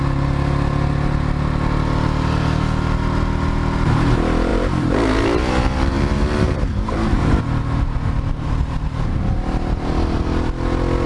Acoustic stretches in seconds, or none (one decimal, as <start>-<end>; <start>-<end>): 0.0-4.5; 7.4-11.1